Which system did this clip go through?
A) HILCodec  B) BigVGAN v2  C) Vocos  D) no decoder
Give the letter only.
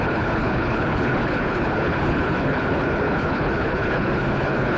A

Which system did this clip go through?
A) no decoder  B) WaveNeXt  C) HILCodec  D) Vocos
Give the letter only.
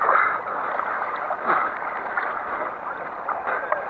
A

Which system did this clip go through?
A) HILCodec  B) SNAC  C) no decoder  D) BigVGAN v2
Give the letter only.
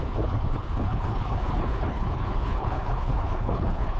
A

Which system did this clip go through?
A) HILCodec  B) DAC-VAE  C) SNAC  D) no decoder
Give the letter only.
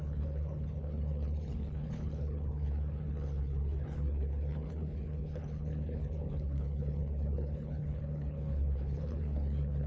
A